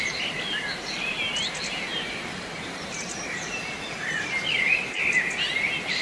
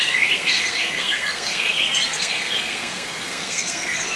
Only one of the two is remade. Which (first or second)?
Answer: second